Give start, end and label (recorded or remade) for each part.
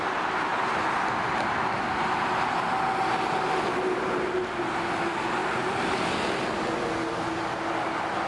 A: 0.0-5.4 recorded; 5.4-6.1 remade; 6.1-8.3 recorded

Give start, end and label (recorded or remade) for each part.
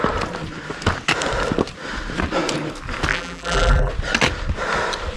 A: 0.0-3.1 recorded; 3.1-3.9 remade; 3.9-5.2 recorded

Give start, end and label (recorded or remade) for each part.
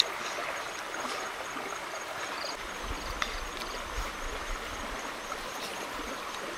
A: 0.0-0.4 recorded; 0.4-1.5 remade; 1.5-6.6 recorded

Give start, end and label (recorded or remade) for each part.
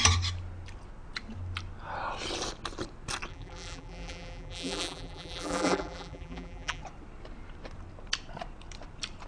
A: 0.0-3.3 recorded; 3.3-6.8 remade; 6.8-9.3 recorded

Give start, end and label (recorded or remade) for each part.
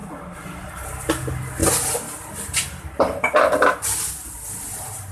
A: 0.0-1.6 recorded; 1.6-4.0 remade; 4.0-5.1 recorded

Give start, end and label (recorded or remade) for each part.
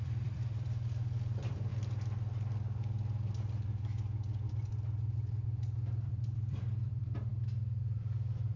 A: 0.0-1.7 remade; 1.7-4.5 recorded; 4.5-7.3 remade; 7.3-7.8 recorded; 7.8-8.6 remade